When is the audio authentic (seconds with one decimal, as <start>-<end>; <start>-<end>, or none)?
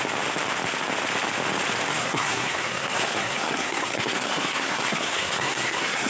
0.0-2.0